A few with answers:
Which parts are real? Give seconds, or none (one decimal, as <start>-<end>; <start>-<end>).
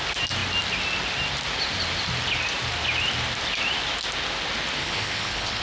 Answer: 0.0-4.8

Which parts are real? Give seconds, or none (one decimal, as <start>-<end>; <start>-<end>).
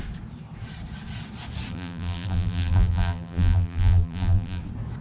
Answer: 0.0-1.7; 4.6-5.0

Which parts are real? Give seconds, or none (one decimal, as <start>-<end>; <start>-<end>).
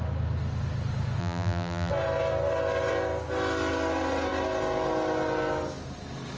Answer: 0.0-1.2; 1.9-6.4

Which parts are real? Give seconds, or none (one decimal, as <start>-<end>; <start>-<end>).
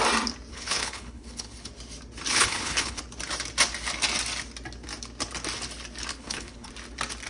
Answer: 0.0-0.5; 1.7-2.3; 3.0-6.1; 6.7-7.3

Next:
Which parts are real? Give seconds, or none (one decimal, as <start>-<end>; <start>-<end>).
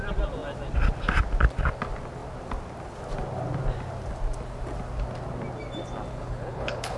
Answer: 0.0-6.1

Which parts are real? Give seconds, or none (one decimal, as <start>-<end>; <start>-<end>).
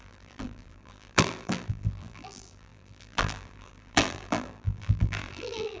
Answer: none